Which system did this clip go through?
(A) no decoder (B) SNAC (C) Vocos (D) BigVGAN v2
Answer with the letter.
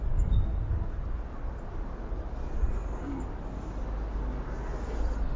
A